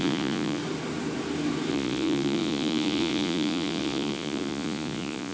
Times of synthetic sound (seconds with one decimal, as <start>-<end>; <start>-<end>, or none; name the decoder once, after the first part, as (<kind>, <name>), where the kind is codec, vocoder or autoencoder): 0.0-0.6 (vocoder, Vocos); 1.7-5.3